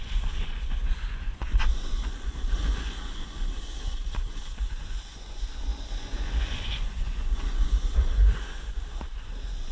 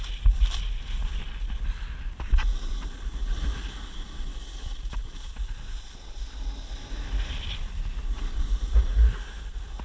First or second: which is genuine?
second